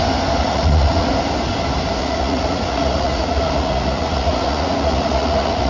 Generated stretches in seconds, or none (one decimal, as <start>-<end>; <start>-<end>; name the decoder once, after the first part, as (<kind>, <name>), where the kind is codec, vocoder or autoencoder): 0.4-1.1 (vocoder, Vocos); 2.0-5.7